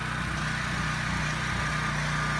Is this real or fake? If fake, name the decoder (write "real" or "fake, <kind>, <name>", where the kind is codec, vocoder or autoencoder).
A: real